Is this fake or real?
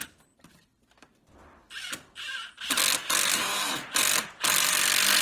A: real